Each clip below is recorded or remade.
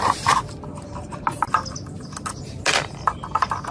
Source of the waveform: recorded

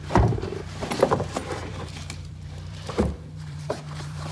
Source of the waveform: remade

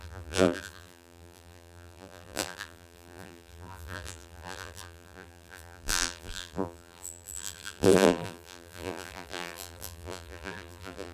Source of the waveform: remade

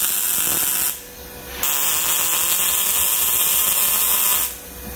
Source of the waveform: recorded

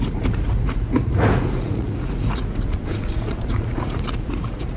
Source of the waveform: remade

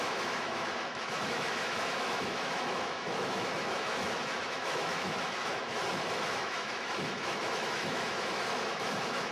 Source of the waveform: remade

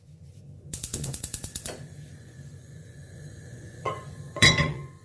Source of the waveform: remade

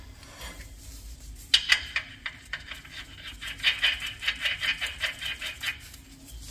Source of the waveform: recorded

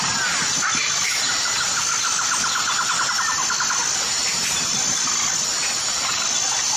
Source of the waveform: recorded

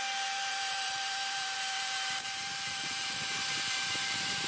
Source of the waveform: remade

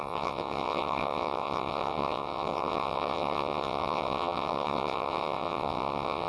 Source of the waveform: remade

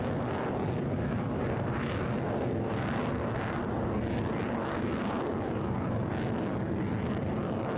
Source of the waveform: recorded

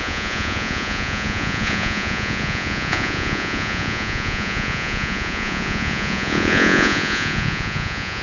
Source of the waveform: remade